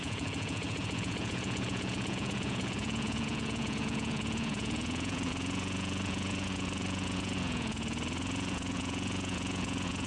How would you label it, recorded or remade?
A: remade